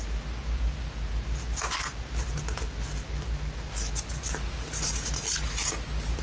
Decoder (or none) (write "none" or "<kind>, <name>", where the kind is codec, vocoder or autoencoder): none